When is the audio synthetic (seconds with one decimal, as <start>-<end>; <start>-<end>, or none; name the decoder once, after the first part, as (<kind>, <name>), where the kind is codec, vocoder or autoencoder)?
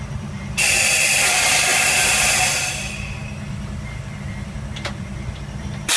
0.0-1.7 (vocoder, BigVGAN v2); 2.9-6.0